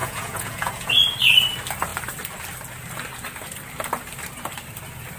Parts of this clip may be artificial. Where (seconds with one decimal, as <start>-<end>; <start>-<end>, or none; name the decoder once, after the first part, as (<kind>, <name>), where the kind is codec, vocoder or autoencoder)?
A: 0.0-0.9 (vocoder, Vocos)